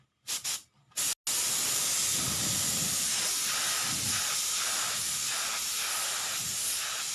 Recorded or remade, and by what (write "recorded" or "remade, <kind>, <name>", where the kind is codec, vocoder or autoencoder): recorded